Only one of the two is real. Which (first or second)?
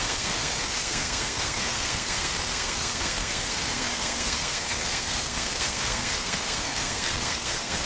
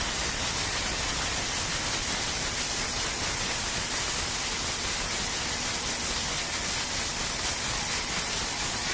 second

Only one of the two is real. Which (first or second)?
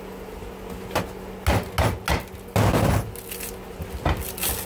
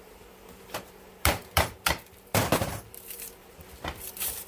first